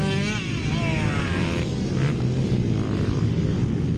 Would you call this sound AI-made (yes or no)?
no